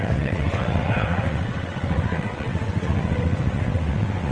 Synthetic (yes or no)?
yes